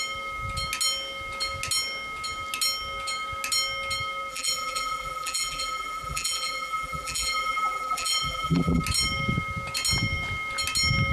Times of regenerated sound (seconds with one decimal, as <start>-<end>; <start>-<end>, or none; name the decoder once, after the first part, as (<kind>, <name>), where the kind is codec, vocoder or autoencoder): 4.3-8.8 (vocoder, BigVGAN v2)